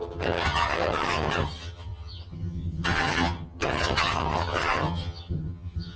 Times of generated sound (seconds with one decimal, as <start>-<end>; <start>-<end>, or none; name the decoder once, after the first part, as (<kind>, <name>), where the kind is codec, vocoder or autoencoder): 0.0-6.0 (vocoder, HiFi-GAN)

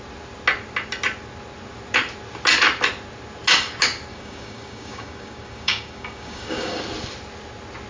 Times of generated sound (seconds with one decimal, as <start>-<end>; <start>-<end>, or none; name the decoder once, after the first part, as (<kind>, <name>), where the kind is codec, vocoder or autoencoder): 4.1-6.8 (codec, DAC)

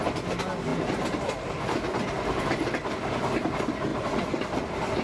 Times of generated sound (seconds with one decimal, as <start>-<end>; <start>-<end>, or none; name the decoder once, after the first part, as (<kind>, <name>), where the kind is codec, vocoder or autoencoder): none

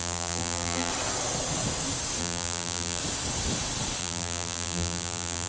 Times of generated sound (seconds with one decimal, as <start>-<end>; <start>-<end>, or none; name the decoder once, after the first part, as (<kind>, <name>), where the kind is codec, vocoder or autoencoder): 0.0-0.9 (vocoder, BigVGAN v2); 2.2-3.0; 4.0-5.5

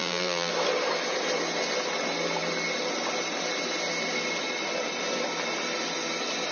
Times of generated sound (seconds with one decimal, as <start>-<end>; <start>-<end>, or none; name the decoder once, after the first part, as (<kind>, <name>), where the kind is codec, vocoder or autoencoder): 0.0-0.5 (vocoder, BigVGAN v2)